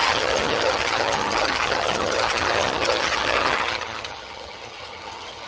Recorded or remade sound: remade